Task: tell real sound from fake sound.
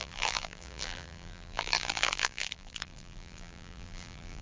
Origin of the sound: fake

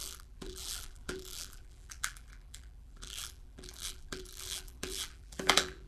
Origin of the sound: fake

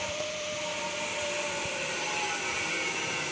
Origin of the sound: fake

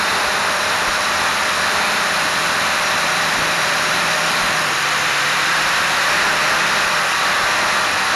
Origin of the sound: fake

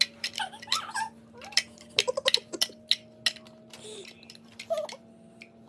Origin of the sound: real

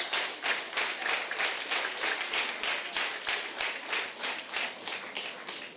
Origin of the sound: real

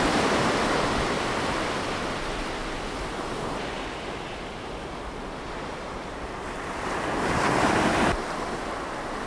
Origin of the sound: real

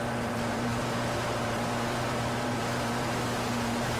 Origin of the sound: fake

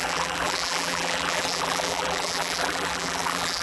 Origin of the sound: fake